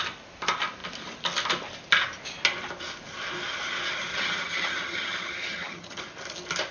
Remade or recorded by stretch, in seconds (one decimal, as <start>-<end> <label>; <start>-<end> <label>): 0.0-4.1 recorded; 4.1-6.0 remade; 6.0-6.7 recorded